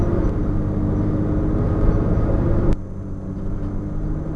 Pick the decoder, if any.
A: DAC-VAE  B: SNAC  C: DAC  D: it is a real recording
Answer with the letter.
D